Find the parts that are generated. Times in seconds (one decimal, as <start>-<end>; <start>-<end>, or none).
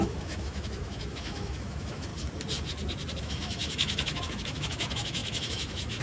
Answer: 0.0-2.1; 3.2-6.0